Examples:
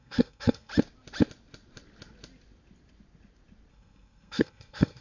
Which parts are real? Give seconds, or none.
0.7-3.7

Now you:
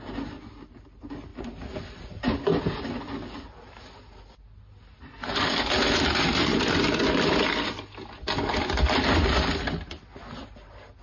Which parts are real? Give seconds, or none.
0.0-11.0

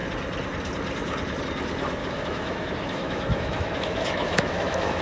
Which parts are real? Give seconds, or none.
0.0-2.0

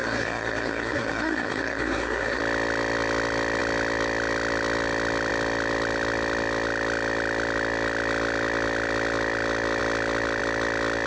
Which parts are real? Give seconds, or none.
2.4-11.1

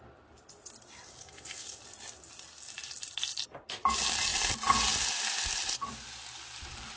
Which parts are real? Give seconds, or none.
0.0-1.2; 1.8-7.0

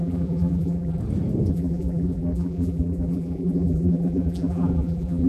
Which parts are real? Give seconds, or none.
1.0-1.5

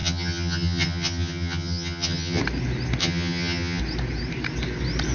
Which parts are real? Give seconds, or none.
2.4-3.0; 3.8-5.1

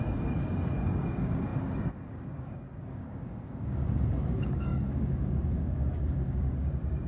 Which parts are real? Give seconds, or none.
none